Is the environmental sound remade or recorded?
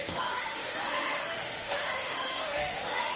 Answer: remade